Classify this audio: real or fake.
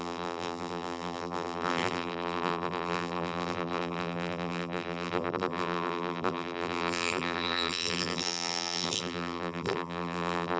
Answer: fake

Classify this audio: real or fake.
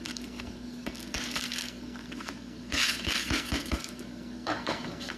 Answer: fake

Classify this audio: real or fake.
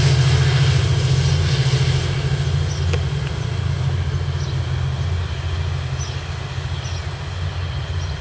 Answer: real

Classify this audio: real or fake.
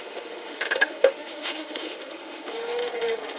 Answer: fake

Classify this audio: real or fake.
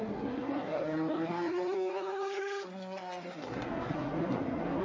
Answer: fake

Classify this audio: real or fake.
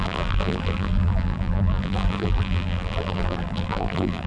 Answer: fake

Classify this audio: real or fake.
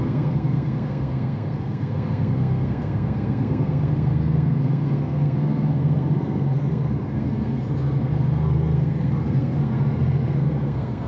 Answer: fake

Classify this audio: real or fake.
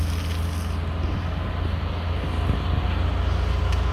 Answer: real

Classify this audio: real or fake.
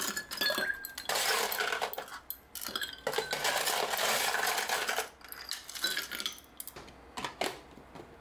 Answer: real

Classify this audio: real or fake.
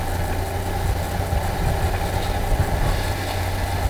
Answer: real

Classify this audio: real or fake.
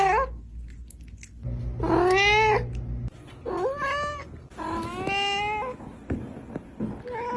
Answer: real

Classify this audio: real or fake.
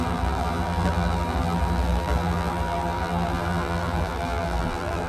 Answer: fake